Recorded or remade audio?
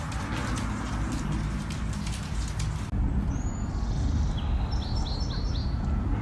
recorded